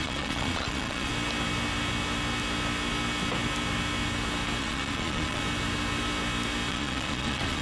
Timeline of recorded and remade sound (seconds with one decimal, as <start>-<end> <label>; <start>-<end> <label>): 0.0-1.1 remade; 1.1-4.6 recorded; 4.6-5.4 remade; 5.4-6.7 recorded; 6.7-7.6 remade